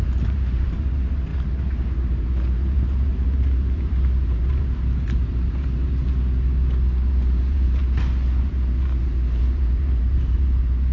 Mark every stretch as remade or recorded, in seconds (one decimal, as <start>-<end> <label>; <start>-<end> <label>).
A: 0.0-6.1 remade; 6.1-7.1 recorded; 7.1-7.8 remade; 7.8-8.4 recorded; 8.4-10.9 remade